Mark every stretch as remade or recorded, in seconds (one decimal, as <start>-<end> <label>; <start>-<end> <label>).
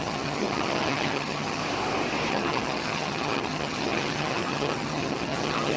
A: 0.0-1.6 remade; 1.6-2.3 recorded; 2.3-5.8 remade